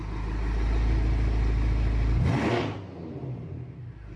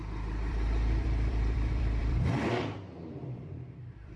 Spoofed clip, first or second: second